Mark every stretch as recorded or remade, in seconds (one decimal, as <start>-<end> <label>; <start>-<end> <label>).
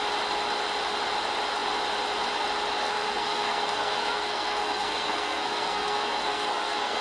0.0-2.8 recorded; 2.8-7.0 remade